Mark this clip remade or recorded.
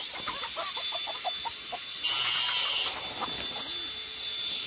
recorded